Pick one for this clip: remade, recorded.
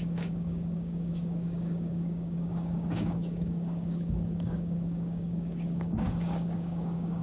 remade